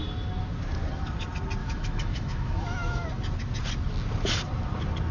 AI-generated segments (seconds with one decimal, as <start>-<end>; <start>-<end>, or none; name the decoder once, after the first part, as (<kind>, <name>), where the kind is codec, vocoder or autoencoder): 1.6-3.1 (autoencoder, DAC-VAE)